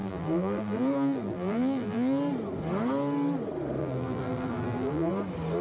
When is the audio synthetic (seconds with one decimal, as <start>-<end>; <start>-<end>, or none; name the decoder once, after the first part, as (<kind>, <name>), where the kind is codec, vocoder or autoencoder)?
0.0-2.2 (vocoder, BigVGAN v2); 3.8-5.1